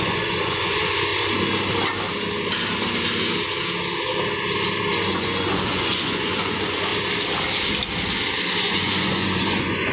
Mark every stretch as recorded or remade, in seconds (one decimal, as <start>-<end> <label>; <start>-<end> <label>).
0.0-1.1 remade; 1.1-5.1 recorded; 5.1-6.9 remade; 6.9-8.6 recorded; 8.6-9.9 remade